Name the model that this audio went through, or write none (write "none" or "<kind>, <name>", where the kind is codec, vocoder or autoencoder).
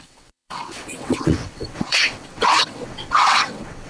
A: vocoder, WaveNeXt